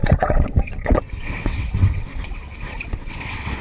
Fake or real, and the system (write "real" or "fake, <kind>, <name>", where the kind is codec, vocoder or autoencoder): fake, vocoder, WaveNeXt